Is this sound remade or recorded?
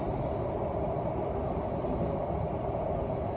recorded